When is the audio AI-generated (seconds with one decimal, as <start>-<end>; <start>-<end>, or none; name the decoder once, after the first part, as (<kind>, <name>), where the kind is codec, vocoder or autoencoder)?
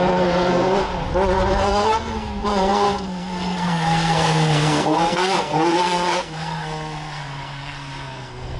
0.0-0.9 (codec, SNAC); 1.5-8.6